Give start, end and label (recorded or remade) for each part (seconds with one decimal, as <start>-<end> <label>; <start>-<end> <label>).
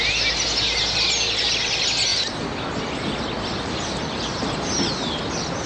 0.0-5.7 recorded